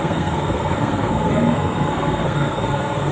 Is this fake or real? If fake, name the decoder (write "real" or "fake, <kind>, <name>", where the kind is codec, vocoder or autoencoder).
fake, codec, SNAC